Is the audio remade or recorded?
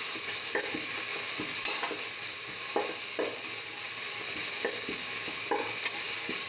recorded